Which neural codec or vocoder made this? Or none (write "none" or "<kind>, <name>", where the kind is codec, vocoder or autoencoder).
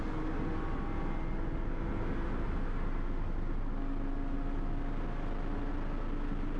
none